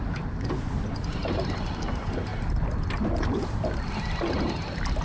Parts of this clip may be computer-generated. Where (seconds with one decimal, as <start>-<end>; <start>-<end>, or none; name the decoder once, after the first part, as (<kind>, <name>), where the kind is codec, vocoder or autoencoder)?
none